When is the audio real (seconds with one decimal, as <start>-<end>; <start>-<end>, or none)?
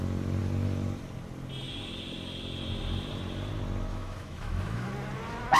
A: 0.0-3.9; 4.9-5.6